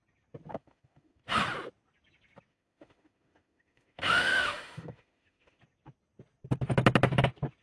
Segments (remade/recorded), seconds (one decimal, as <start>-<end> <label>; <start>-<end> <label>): 0.0-0.5 recorded; 0.5-1.4 remade; 1.4-2.5 recorded; 2.5-5.6 remade; 5.6-7.6 recorded